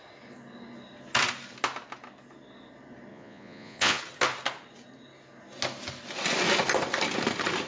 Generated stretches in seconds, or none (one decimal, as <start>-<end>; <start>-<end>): 3.1-4.0